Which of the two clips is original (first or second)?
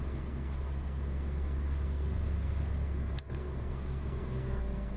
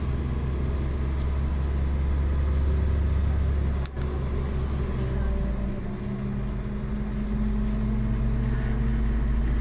second